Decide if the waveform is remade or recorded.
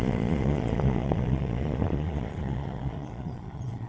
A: remade